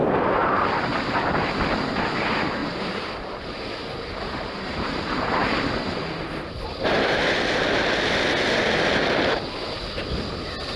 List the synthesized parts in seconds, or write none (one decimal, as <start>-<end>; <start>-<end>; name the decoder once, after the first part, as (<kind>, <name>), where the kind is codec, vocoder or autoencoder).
2.6-7.1 (vocoder, BigVGAN v2)